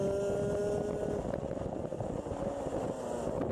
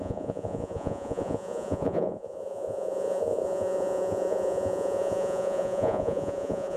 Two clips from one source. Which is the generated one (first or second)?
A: second